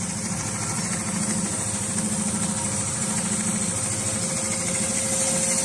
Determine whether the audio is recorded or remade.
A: recorded